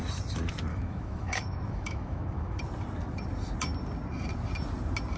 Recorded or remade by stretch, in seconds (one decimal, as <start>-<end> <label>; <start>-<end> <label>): 0.0-0.7 recorded; 0.7-2.6 remade; 2.6-5.2 recorded